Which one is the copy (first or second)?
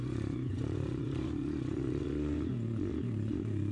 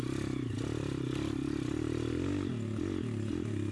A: first